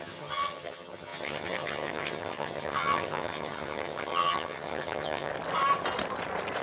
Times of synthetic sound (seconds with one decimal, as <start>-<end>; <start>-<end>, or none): 0.0-5.3